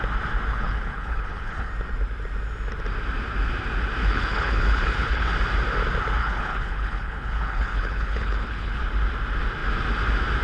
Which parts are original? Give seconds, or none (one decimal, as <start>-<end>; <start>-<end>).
0.0-0.5; 1.7-4.0; 5.3-6.2; 8.8-10.4